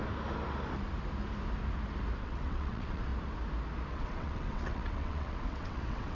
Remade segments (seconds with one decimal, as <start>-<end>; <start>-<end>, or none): 2.2-3.1; 3.9-6.1